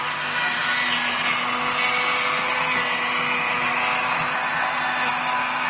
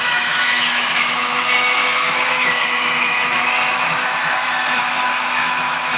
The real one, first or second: first